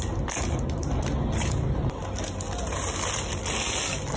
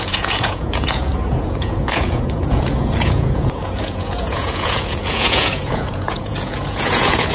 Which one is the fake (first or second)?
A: second